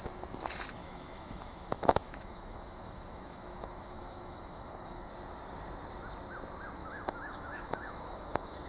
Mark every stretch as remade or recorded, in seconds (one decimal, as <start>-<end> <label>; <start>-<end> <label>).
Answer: 0.0-0.8 recorded; 0.8-5.1 remade; 5.1-6.8 recorded; 6.8-8.7 remade